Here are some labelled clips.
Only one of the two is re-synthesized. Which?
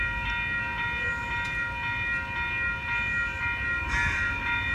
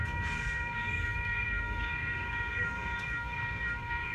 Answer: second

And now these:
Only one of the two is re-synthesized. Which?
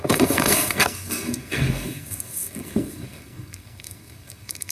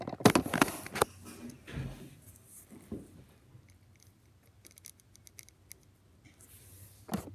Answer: first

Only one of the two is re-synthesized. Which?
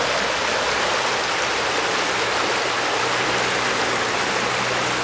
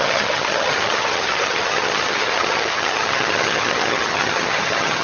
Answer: second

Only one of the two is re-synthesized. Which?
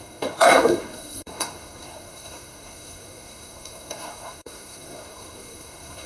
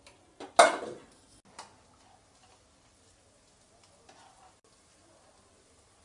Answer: first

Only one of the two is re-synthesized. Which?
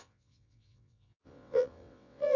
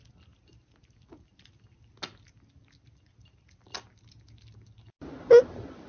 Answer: first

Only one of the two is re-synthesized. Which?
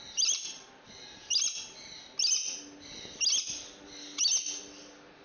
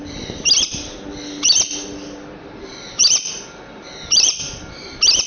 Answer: second